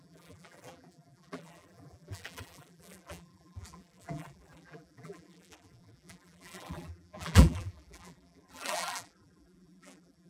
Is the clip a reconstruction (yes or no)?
yes